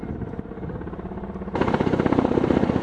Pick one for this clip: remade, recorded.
remade